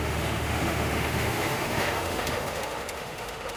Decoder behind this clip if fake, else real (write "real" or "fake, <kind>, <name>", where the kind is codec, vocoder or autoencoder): fake, autoencoder, DAC-VAE